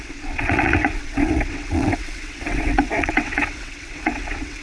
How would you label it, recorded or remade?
remade